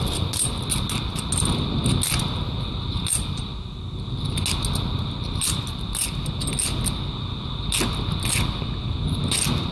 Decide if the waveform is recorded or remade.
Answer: recorded